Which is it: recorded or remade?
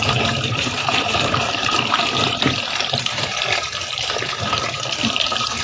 remade